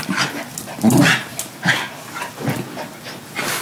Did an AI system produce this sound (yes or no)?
no